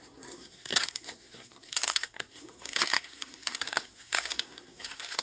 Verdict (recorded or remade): remade